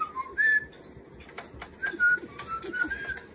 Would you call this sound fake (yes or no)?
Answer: no